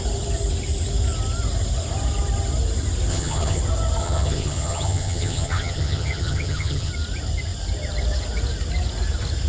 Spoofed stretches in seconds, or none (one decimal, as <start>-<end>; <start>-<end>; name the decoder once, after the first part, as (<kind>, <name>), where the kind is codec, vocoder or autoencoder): 3.1-3.6 (vocoder, HiFi-GAN); 4.0-6.9